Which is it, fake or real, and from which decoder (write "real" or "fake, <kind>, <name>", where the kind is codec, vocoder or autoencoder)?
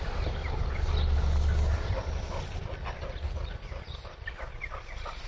real